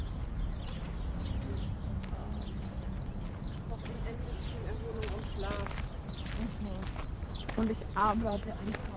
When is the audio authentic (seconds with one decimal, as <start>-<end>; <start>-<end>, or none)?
0.9-1.7; 2.2-6.9